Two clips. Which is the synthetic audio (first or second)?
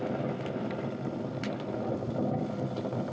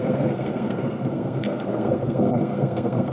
second